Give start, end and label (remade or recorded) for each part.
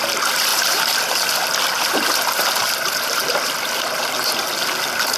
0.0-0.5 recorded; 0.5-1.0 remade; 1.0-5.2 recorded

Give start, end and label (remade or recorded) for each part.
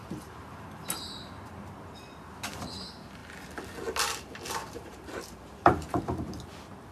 0.0-1.3 remade; 1.3-4.6 recorded; 4.6-6.0 remade; 6.0-6.9 recorded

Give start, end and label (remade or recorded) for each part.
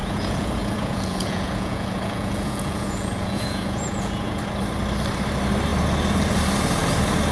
0.0-4.4 remade; 4.4-7.3 recorded